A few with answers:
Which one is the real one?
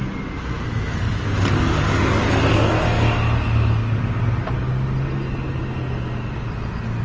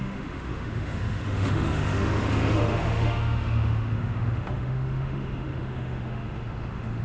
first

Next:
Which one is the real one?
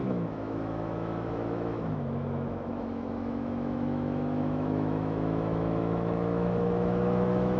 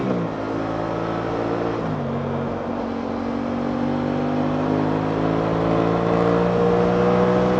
second